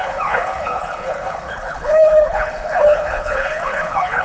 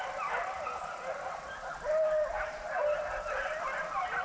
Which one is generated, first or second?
first